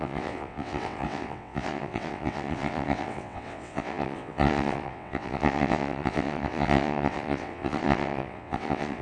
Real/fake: fake